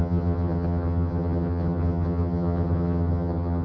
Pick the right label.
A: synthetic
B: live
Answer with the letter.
A